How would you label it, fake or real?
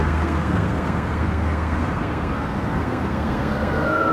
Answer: fake